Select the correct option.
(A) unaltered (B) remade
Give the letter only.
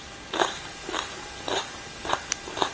A